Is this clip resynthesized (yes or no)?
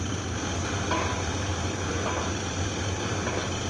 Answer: no